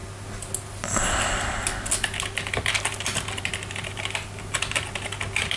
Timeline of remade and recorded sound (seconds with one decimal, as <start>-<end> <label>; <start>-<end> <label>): 0.0-5.6 recorded